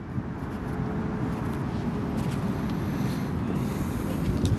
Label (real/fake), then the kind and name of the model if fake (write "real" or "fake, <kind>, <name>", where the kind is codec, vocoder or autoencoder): real